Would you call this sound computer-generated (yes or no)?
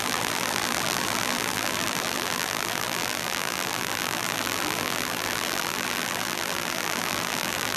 yes